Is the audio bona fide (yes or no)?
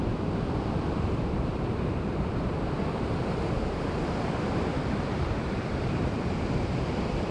no